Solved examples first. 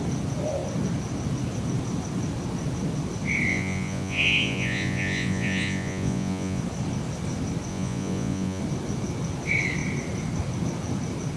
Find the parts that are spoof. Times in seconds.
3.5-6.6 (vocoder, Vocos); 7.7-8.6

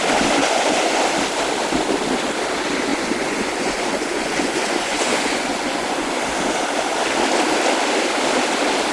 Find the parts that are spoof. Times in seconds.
0.4-1.0 (vocoder, Vocos); 2.9-6.2

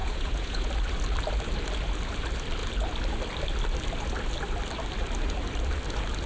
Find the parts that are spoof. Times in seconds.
0.0-0.7 (vocoder, Vocos)

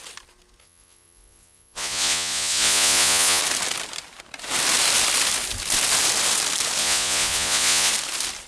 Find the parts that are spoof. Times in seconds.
0.6-3.4 (vocoder, Vocos); 6.8-7.9

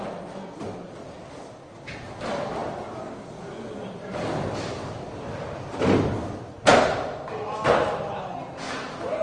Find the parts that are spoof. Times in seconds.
none

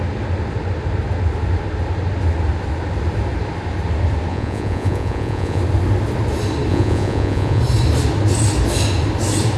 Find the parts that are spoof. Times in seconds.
4.3-5.6 (vocoder, Vocos); 6.7-7.6